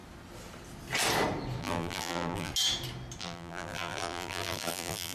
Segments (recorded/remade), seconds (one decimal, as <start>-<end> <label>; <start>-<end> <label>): 0.0-1.6 recorded; 1.6-2.5 remade; 2.5-3.2 recorded; 3.2-5.1 remade